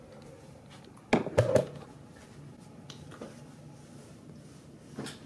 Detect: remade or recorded recorded